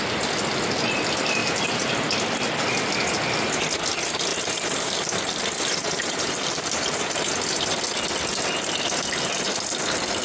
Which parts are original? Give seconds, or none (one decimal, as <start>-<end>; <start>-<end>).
0.0-1.4; 1.9-4.3; 7.1-10.2

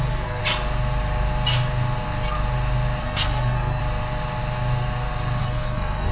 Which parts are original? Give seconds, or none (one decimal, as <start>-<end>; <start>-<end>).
0.4-3.0; 3.8-5.4